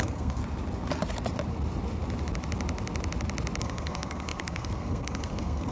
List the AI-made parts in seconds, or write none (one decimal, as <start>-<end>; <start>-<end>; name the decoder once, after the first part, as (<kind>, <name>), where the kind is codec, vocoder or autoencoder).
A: 0.0-0.4 (codec, SNAC); 3.6-5.7